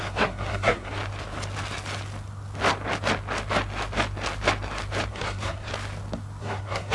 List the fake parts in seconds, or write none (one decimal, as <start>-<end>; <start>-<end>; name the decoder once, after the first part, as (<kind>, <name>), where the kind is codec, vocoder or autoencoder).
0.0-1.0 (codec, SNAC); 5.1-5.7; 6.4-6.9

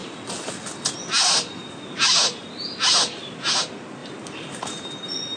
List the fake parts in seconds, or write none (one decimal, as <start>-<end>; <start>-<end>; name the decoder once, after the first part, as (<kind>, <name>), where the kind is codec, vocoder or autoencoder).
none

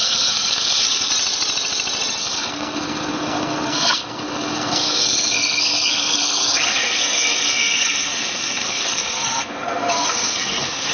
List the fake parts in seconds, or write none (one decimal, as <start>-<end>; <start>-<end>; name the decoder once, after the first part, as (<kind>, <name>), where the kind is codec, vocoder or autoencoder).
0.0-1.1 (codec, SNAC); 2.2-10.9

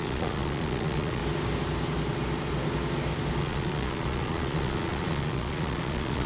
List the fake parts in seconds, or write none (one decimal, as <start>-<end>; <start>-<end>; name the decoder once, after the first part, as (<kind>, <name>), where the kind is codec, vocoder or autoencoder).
0.0-1.2 (vocoder, Vocos); 3.4-6.3